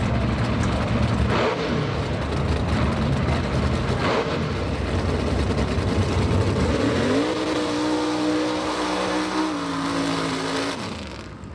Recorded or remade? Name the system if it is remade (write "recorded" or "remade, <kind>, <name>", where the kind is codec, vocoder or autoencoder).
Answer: recorded